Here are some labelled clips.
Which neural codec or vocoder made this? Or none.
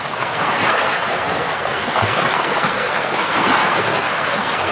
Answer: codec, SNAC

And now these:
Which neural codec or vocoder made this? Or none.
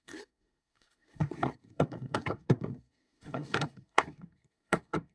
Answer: codec, SNAC